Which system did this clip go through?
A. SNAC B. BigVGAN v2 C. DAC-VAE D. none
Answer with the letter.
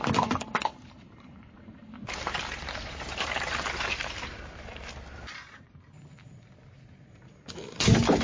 B